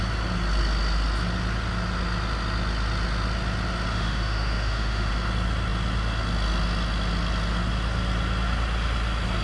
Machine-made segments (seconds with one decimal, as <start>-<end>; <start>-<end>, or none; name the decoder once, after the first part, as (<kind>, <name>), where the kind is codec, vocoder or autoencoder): 3.9-5.1 (autoencoder, DAC-VAE)